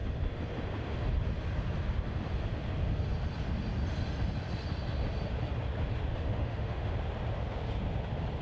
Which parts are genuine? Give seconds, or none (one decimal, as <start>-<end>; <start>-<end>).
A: 0.0-6.1; 6.9-8.4